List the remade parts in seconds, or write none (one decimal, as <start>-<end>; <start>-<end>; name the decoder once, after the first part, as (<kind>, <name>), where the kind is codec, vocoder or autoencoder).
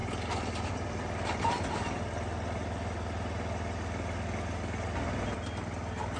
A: none